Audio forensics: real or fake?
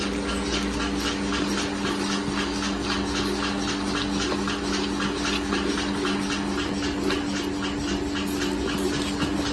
real